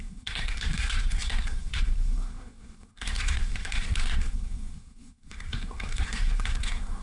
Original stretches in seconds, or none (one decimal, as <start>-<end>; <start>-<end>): none